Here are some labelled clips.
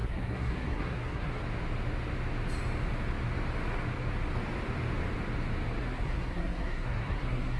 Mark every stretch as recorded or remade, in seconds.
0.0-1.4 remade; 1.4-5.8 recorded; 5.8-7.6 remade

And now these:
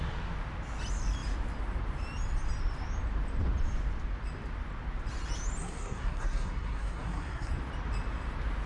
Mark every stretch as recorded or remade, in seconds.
0.0-5.6 recorded; 5.6-7.5 remade; 7.5-8.7 recorded